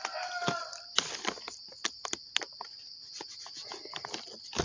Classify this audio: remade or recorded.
recorded